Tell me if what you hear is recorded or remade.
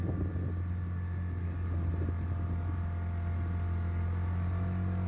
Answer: recorded